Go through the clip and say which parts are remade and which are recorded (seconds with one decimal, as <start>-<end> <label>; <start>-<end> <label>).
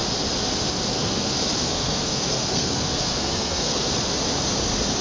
0.0-0.9 recorded; 0.9-3.9 remade; 3.9-5.0 recorded